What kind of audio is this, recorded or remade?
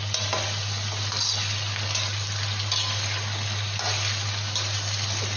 recorded